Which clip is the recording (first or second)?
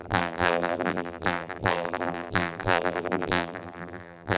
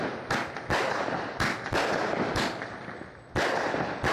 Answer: second